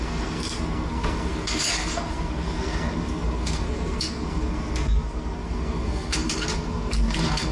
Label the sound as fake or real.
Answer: fake